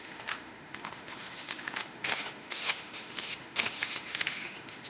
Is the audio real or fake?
fake